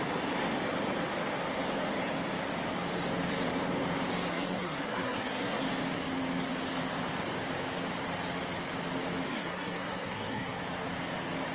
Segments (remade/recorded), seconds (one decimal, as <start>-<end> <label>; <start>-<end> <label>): 0.0-4.3 recorded; 4.3-5.6 remade; 5.6-9.3 recorded; 9.3-10.6 remade; 10.6-11.5 recorded